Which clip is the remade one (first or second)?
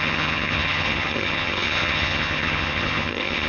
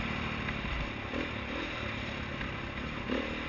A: first